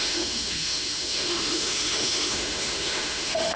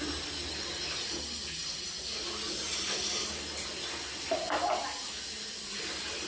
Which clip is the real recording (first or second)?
second